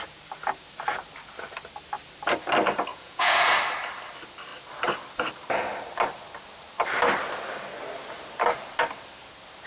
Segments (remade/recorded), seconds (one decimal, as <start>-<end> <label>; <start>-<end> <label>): 0.0-2.9 recorded; 2.9-3.5 remade; 3.5-9.7 recorded